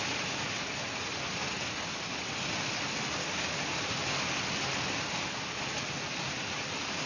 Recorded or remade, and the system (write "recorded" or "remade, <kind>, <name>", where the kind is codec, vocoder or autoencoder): recorded